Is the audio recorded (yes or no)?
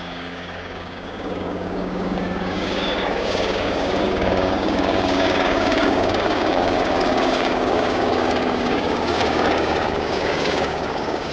no